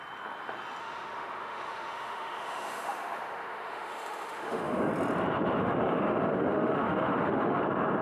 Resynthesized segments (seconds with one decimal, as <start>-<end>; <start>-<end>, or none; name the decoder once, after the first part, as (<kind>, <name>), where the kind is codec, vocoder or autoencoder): 0.8-4.9 (autoencoder, DAC-VAE); 5.6-7.6